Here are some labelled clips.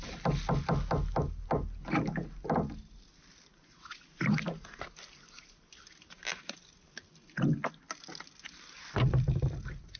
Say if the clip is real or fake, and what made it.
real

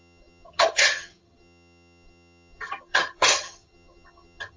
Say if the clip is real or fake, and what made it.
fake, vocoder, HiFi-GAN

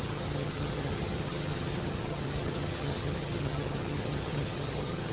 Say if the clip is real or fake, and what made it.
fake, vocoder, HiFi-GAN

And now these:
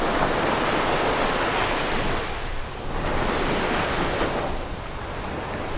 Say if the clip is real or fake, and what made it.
real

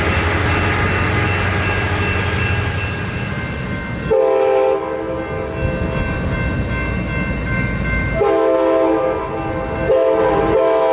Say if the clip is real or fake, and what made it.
real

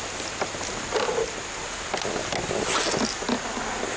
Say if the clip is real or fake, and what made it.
real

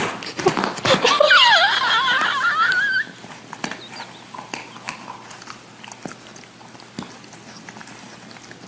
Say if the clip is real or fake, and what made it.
real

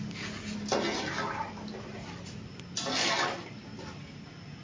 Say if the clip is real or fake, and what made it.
real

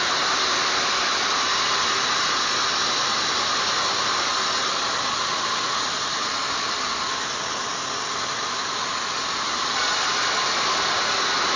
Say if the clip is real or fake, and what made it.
real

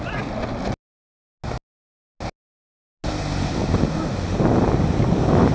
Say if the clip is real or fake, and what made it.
real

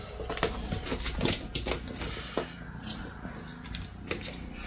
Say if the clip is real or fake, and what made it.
real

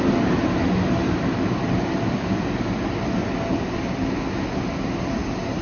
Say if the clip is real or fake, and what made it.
real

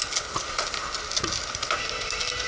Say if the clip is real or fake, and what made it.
real